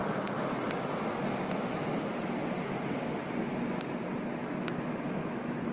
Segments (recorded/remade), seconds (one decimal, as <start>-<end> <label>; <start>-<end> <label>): 0.0-4.6 recorded; 4.6-5.7 remade